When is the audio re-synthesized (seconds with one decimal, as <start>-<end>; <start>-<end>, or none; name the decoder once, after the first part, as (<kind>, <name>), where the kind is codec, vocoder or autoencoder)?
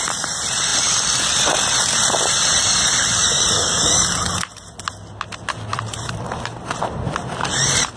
5.7-8.0 (vocoder, BigVGAN v2)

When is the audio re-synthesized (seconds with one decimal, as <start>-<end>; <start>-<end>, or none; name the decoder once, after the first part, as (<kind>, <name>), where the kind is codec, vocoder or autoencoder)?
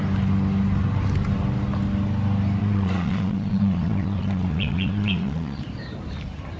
2.6-5.6 (vocoder, Vocos)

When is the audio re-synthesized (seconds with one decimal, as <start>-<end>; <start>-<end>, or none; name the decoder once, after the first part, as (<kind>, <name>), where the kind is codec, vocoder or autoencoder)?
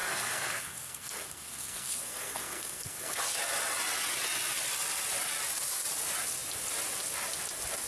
0.0-3.2 (codec, SNAC)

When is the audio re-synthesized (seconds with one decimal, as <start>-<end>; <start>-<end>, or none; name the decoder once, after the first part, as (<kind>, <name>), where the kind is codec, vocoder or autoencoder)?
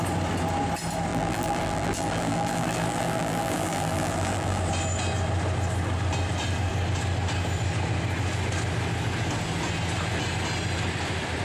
1.1-4.6 (vocoder, BigVGAN v2)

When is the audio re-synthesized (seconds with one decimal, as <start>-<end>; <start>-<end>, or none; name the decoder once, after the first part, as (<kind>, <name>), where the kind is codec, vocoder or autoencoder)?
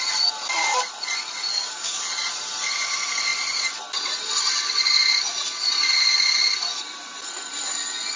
1.5-2.0 (codec, DAC)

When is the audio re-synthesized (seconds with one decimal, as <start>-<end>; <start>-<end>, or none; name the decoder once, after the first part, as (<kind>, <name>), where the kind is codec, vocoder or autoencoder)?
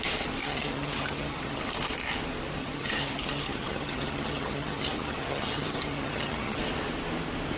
0.4-1.6 (vocoder, HiFi-GAN); 2.6-6.6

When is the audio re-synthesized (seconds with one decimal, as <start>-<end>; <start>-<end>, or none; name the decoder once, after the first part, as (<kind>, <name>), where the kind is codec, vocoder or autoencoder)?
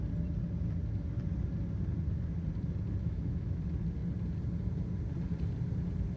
3.0-3.6 (autoencoder, DAC-VAE)